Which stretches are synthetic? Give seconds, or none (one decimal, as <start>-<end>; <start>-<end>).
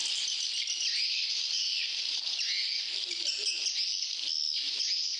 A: none